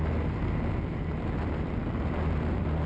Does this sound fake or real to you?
real